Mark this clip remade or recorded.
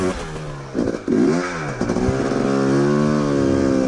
recorded